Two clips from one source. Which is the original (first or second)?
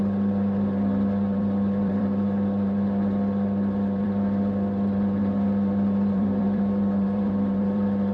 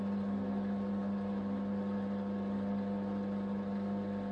second